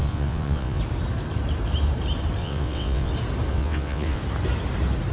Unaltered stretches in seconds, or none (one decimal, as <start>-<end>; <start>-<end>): 0.8-2.4; 3.1-3.5; 4.2-5.1